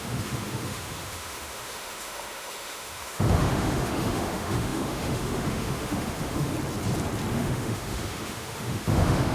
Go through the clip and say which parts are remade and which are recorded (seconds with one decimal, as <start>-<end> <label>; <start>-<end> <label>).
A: 0.0-6.5 remade; 6.5-7.3 recorded; 7.3-9.3 remade